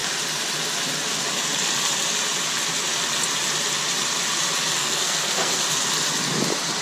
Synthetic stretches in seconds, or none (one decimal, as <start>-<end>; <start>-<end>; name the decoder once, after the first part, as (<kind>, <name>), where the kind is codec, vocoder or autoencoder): 4.8-5.6 (codec, SNAC)